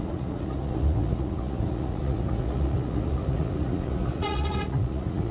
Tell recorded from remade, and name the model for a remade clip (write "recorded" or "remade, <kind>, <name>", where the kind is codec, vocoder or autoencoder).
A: remade, vocoder, Vocos